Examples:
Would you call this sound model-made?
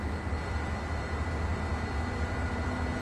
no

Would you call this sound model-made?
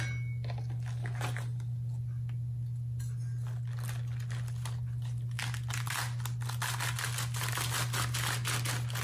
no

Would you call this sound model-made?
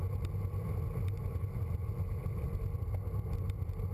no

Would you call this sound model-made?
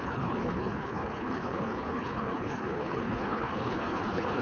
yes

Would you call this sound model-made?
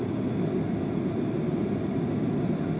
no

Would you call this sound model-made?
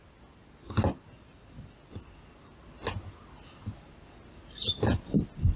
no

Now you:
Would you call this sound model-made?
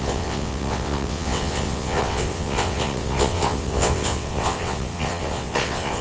yes